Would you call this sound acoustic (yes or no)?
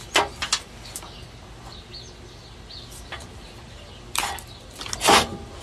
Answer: yes